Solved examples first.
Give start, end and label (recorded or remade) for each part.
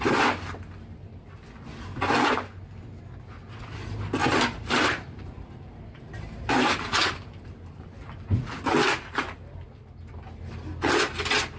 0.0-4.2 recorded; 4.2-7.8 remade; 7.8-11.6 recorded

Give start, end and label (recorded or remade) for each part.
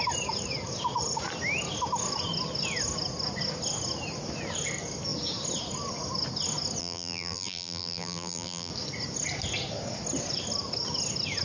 0.0-6.8 recorded; 6.8-8.7 remade; 8.7-11.4 recorded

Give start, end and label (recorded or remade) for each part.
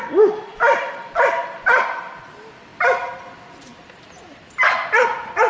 0.0-0.5 recorded; 0.5-2.2 remade; 2.2-5.5 recorded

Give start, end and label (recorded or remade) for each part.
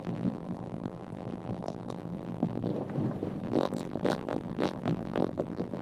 0.0-2.7 remade; 2.7-3.4 recorded; 3.4-5.8 remade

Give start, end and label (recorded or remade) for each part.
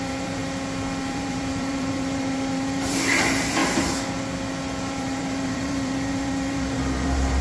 0.0-0.4 remade; 0.4-1.0 recorded; 1.0-3.6 remade; 3.6-4.8 recorded; 4.8-7.4 remade